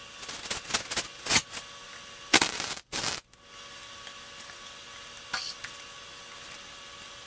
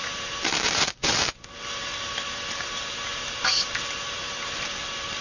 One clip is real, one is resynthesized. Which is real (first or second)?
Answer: first